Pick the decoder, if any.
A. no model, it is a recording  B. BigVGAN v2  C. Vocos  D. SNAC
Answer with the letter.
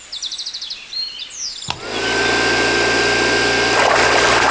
A